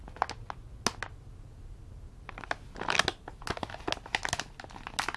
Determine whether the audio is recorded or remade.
recorded